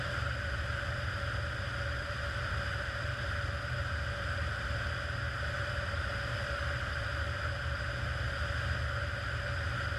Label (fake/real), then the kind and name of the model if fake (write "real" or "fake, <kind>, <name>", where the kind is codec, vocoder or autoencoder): real